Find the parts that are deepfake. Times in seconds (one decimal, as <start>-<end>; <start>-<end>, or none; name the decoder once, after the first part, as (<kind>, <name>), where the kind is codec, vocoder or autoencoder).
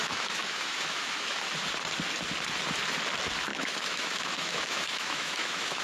0.0-1.4 (autoencoder, DAC-VAE); 3.5-5.8